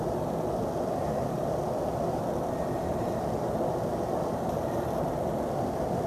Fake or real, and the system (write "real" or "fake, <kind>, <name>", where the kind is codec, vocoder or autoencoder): fake, vocoder, BigVGAN v2